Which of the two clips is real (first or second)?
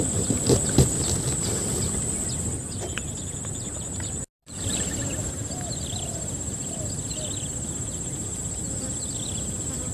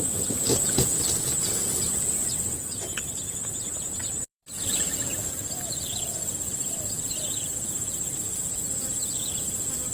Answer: first